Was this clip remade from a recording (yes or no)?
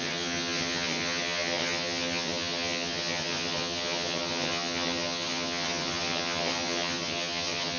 yes